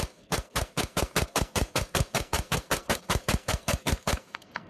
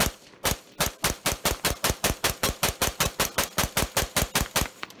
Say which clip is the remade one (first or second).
first